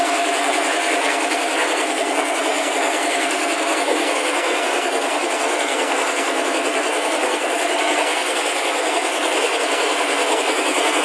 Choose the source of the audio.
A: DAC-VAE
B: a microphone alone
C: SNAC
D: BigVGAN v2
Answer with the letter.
C